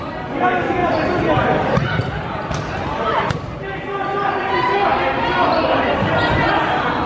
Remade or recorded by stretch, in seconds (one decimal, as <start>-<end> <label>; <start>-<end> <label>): 0.0-7.1 recorded